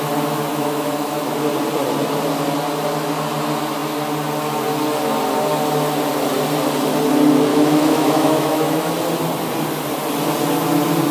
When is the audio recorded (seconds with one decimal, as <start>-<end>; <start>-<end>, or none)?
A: 0.0-0.5; 1.2-7.5; 8.9-11.1

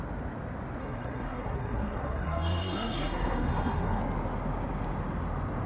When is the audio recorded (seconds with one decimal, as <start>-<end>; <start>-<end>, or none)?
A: 0.0-0.8; 4.0-5.7

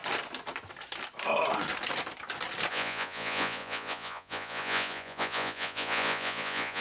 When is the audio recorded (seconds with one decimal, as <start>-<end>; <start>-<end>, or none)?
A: 0.0-2.7

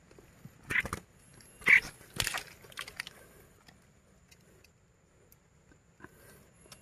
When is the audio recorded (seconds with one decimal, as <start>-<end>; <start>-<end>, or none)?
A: 0.0-6.8

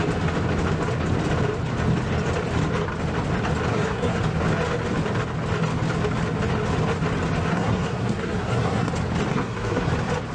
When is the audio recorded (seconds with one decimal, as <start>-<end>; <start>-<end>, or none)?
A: 0.0-3.7; 4.2-7.5; 8.9-9.3; 9.9-10.3